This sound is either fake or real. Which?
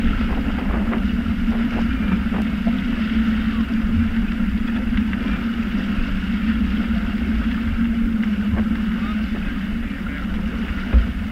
real